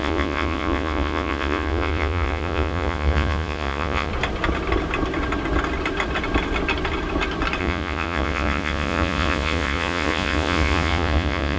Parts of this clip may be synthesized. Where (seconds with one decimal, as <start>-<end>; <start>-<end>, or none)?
0.0-4.1; 7.6-11.6